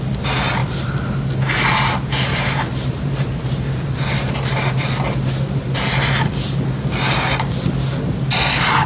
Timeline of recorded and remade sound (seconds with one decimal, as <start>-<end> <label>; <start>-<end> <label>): 0.0-0.6 recorded; 0.6-1.2 remade; 1.2-2.3 recorded; 2.3-4.3 remade; 4.3-8.9 recorded